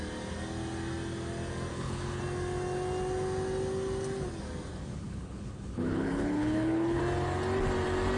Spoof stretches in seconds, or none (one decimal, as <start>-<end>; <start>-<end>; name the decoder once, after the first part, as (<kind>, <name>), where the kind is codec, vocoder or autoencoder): 1.7-2.2 (codec, HILCodec); 4.7-7.0